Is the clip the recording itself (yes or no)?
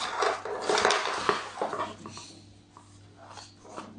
yes